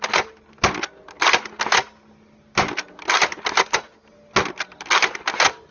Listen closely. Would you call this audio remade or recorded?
recorded